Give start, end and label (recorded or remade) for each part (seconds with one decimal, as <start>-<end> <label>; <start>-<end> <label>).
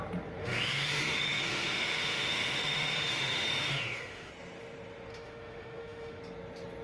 0.0-0.4 recorded; 0.4-4.3 remade; 4.3-5.1 recorded; 5.1-6.2 remade; 6.2-6.8 recorded